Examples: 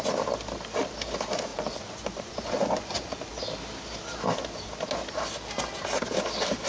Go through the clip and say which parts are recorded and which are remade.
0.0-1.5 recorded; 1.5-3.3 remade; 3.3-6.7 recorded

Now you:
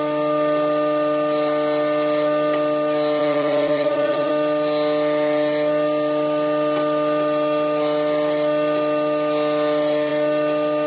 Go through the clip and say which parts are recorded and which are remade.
0.0-3.2 recorded; 3.2-4.3 remade; 4.3-10.9 recorded

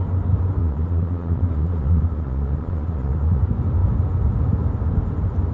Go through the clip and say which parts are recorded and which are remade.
0.0-0.6 recorded; 0.6-3.4 remade; 3.4-5.5 recorded

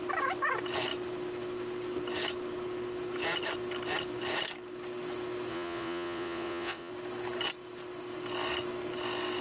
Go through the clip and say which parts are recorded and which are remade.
0.0-5.5 recorded; 5.5-6.9 remade; 6.9-9.4 recorded

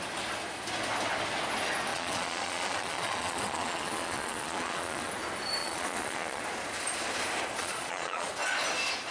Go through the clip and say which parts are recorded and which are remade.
0.0-1.9 recorded; 1.9-5.1 remade; 5.1-5.6 recorded; 5.6-6.4 remade; 6.4-7.6 recorded; 7.6-8.3 remade; 8.3-9.1 recorded